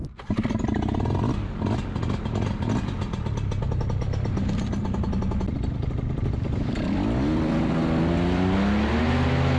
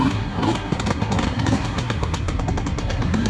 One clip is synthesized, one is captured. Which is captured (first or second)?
first